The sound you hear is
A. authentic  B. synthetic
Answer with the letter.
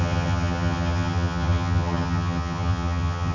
B